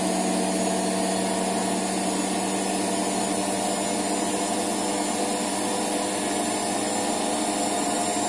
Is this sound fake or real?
real